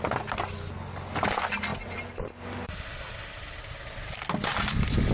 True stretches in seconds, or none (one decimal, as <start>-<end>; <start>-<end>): 0.0-5.1